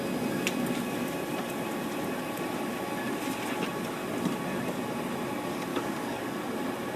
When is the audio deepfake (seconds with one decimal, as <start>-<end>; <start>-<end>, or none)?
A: 5.7-6.3